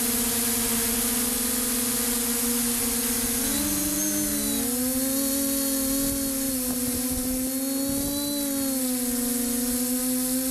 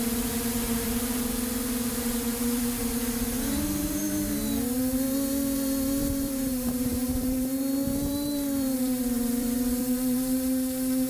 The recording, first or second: first